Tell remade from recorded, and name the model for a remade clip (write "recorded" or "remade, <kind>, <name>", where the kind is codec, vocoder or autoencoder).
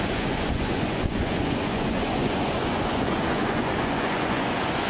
remade, vocoder, Vocos